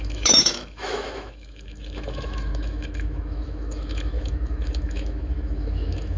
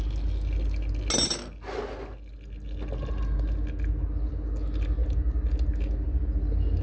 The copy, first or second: first